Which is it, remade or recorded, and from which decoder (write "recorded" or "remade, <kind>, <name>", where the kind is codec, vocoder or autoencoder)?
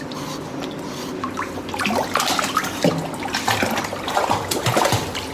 recorded